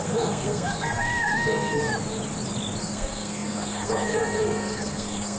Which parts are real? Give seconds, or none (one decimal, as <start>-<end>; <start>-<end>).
1.9-2.8